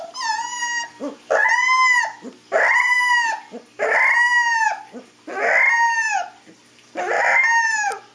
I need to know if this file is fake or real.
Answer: real